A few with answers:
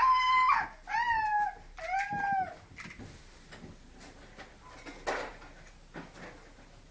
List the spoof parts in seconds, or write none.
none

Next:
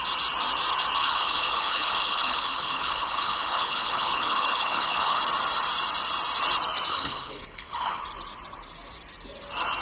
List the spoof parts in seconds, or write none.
1.0-5.2 (codec, HILCodec); 6.9-8.0

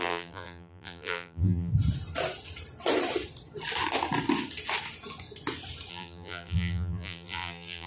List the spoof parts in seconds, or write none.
0.0-1.7 (vocoder, BigVGAN v2); 5.9-7.9

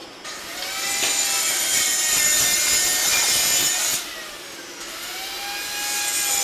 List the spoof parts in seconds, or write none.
none